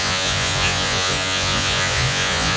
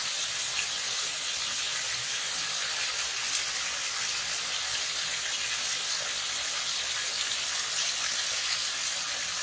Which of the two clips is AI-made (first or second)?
first